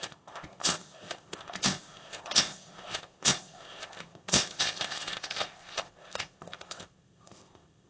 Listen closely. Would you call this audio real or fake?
fake